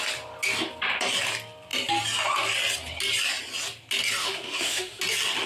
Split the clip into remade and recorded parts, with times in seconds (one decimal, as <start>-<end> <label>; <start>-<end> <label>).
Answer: 0.0-4.2 recorded; 4.2-5.0 remade; 5.0-5.5 recorded